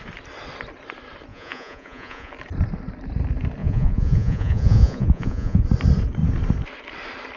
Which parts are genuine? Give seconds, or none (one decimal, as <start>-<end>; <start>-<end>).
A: 0.0-1.3; 2.3-3.6; 5.6-7.4